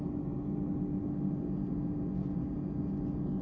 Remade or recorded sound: recorded